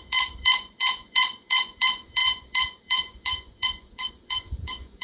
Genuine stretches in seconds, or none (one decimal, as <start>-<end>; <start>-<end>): none